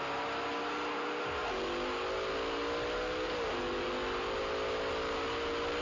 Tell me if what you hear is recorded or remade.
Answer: recorded